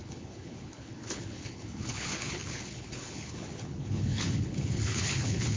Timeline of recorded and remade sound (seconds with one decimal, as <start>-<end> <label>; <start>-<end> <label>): 0.0-5.6 remade